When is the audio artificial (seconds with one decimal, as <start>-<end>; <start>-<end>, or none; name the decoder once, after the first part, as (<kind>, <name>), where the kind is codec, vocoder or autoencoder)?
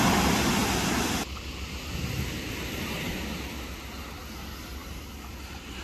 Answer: none